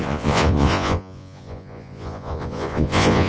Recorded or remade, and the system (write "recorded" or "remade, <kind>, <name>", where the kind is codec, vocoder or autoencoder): remade, vocoder, Vocos